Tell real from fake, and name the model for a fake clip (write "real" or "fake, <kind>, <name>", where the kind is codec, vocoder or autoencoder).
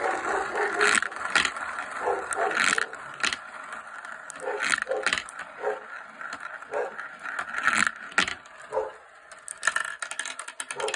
real